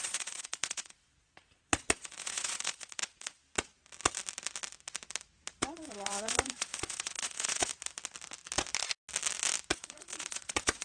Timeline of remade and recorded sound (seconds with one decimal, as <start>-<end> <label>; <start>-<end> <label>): 0.0-3.4 remade; 3.4-5.7 recorded; 5.7-7.7 remade; 7.7-9.7 recorded; 9.7-10.8 remade